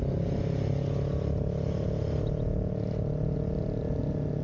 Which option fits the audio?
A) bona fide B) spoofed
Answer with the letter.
A